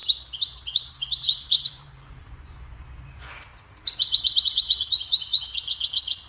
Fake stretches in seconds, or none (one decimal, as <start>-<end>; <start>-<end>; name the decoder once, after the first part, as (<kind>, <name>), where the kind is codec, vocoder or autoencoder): 0.0-3.5 (vocoder, Vocos); 4.4-6.3